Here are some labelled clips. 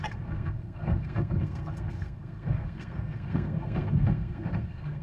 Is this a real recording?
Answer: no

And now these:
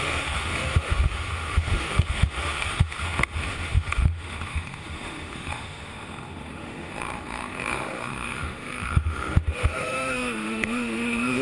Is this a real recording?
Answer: no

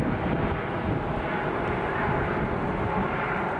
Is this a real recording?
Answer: yes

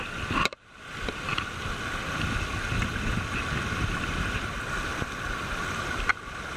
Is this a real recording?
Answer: yes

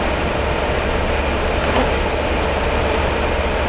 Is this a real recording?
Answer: yes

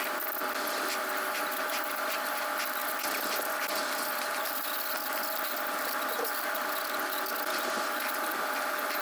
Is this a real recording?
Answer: yes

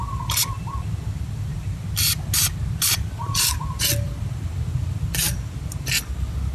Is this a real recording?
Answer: yes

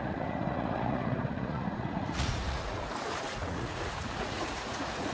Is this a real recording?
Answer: no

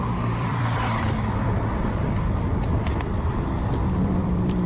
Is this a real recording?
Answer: no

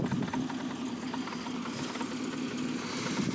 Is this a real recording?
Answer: yes